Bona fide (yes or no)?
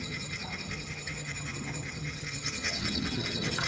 no